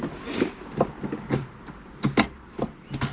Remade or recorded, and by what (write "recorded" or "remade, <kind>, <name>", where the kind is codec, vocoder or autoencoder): recorded